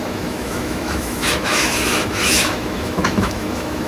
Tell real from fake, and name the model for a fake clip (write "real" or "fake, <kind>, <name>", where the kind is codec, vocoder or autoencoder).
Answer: fake, autoencoder, DAC-VAE